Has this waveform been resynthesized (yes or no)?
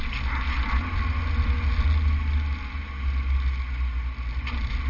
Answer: no